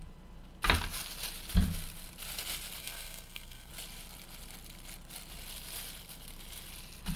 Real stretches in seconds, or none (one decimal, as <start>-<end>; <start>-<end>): 0.0-2.8; 3.7-7.2

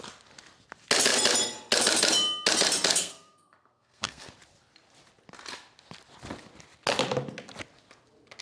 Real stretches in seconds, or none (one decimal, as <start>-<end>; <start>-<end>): 0.0-2.9; 4.3-8.4

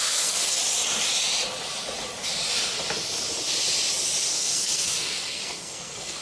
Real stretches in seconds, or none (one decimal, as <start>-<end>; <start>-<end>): 0.6-4.3

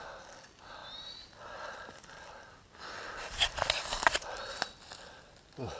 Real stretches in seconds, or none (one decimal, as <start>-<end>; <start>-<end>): 0.0-5.8

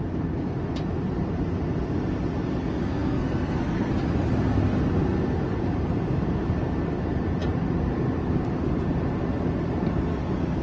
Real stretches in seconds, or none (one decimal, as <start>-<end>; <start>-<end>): 0.0-2.8; 3.9-10.6